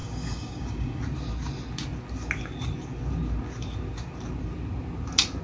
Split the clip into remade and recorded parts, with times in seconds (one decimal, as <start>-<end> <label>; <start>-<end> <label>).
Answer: 0.0-1.0 remade; 1.0-5.4 recorded